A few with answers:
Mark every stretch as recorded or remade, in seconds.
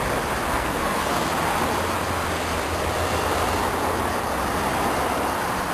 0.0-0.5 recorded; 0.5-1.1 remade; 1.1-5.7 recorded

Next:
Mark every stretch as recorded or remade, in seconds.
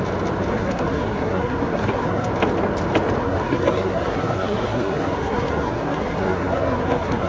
0.0-0.5 recorded; 0.5-2.3 remade; 2.3-3.2 recorded; 3.2-7.3 remade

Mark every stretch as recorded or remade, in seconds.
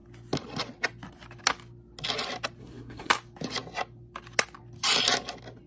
0.0-2.6 recorded; 2.6-3.1 remade; 3.1-5.7 recorded